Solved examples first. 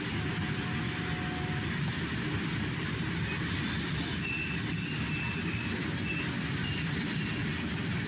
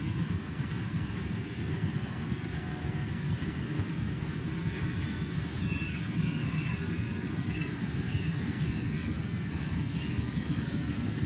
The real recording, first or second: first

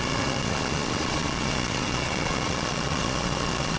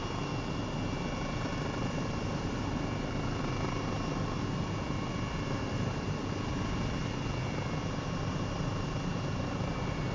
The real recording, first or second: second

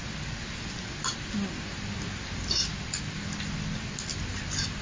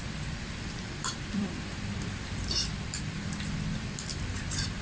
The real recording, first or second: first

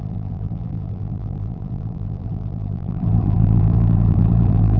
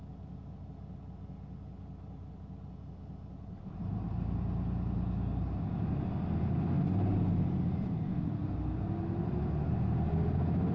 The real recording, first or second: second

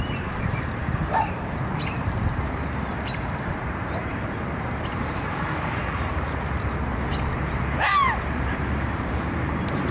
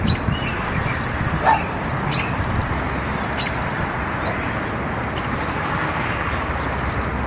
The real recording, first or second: second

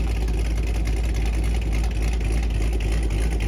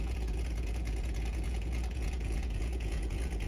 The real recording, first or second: first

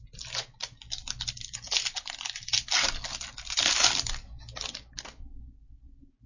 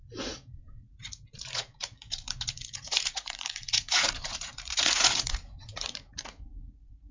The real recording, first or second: first